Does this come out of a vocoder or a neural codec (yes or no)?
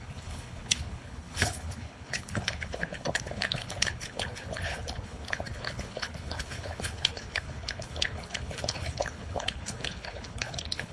yes